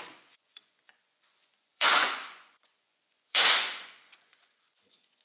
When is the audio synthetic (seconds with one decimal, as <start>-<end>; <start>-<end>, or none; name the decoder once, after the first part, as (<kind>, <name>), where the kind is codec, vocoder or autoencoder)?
0.0-5.2 (vocoder, Vocos)